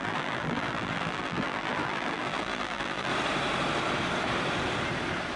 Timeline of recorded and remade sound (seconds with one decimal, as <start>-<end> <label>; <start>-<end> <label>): 0.0-3.1 remade; 3.1-5.4 recorded